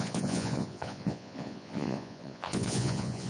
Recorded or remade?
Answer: remade